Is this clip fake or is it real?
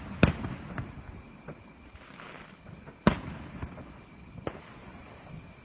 real